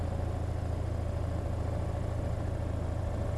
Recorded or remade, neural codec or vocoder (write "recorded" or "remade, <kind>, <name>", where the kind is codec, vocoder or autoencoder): recorded